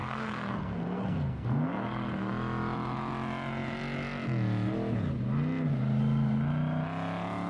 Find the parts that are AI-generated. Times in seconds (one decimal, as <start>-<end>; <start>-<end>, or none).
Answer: 0.0-2.3